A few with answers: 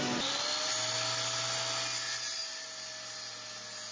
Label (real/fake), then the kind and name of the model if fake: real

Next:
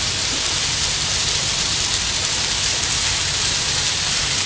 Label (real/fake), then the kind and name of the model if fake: fake, vocoder, BigVGAN v2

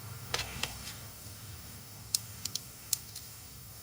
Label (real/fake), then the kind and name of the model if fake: fake, codec, DAC